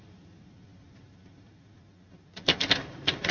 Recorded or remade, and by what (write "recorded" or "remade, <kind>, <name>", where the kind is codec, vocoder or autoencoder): remade, vocoder, BigVGAN v2